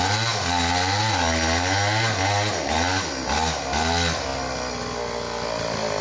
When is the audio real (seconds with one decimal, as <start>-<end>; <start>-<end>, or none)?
0.0-6.0